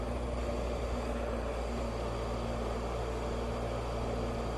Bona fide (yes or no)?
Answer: yes